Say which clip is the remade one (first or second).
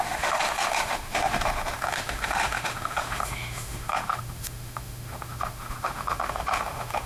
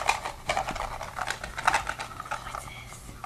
first